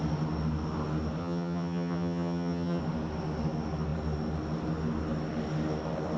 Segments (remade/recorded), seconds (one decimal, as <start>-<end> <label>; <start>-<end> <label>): 0.0-1.2 recorded; 1.2-2.8 remade; 2.8-6.2 recorded